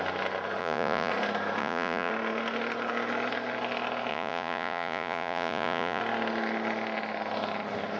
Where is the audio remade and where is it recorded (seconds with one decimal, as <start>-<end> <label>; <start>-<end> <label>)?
0.0-0.6 recorded; 0.6-1.1 remade; 1.1-1.6 recorded; 1.6-2.1 remade; 2.1-4.1 recorded; 4.1-6.0 remade; 6.0-8.0 recorded